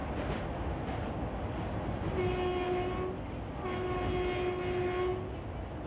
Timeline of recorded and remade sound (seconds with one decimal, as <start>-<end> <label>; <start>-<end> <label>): 0.0-5.9 recorded